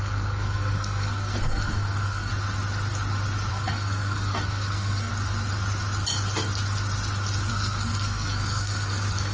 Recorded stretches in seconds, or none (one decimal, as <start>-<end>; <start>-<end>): 2.3-3.5; 5.1-7.5